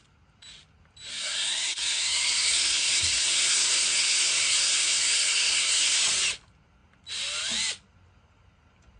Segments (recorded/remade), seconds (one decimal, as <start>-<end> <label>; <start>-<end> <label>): 0.0-1.1 recorded; 1.1-6.0 remade; 6.0-9.0 recorded